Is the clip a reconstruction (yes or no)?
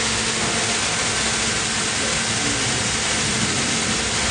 no